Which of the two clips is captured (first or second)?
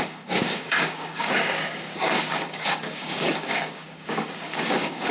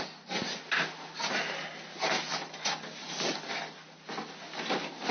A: second